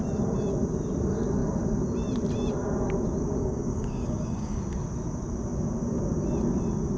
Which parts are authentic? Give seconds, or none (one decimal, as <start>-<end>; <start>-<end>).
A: 0.0-3.4; 4.6-7.0